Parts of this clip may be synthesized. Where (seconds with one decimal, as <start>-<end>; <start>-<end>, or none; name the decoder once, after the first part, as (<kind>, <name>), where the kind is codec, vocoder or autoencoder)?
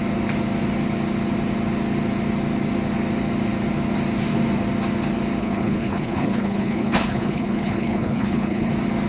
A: 5.4-8.7 (codec, HILCodec)